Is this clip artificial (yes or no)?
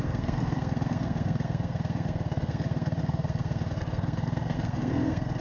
yes